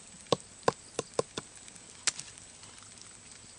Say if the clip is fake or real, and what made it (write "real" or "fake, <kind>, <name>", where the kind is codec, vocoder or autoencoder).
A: real